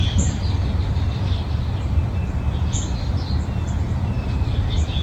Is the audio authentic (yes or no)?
yes